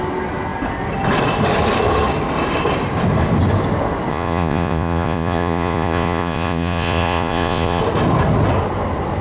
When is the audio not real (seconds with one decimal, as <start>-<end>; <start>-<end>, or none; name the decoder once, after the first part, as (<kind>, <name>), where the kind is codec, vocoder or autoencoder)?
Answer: 4.1-7.8 (vocoder, Vocos)